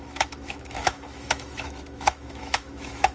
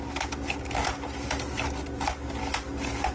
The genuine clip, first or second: second